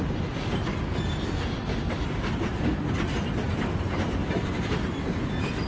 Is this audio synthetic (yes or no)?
no